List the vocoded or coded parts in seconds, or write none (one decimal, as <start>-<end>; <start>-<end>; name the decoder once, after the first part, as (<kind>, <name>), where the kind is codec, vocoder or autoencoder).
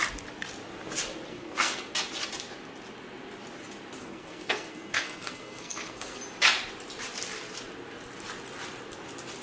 1.3-1.9 (codec, SNAC); 4.0-6.2